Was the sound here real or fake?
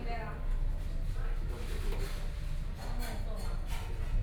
real